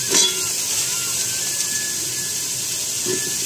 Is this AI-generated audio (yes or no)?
no